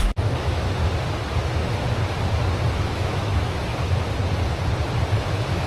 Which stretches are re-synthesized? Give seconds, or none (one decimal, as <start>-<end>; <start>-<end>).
0.0-0.8; 2.7-3.7; 5.2-5.7